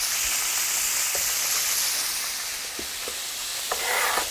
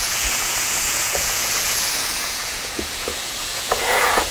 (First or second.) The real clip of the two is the first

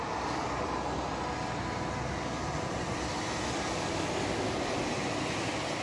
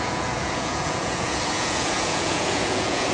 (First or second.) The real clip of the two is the first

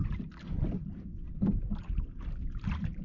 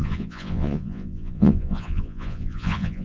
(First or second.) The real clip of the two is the first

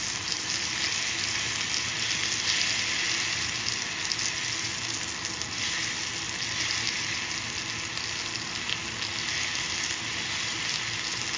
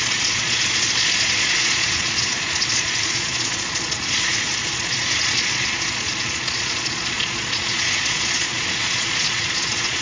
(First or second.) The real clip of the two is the first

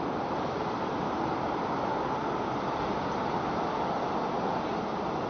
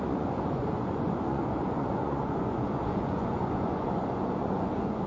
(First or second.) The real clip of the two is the first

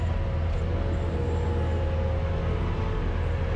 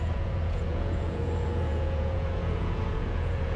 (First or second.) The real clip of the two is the first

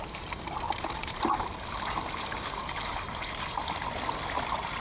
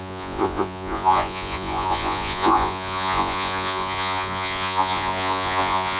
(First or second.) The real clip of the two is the first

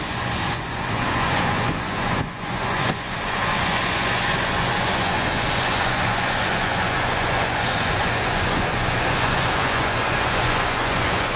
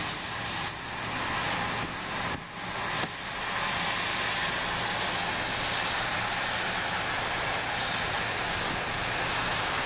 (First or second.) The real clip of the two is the second